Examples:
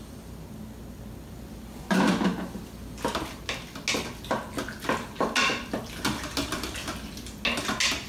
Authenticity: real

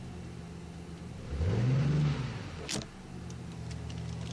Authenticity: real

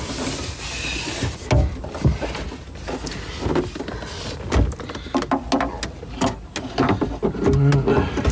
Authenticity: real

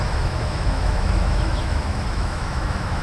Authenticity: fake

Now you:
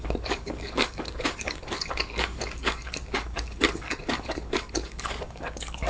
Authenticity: fake